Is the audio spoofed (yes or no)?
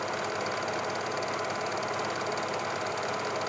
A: no